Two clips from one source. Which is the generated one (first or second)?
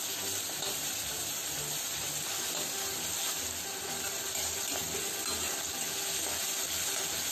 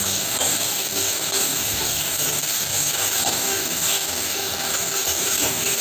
second